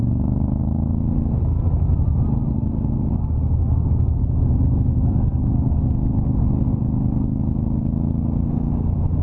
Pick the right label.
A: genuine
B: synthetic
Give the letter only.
A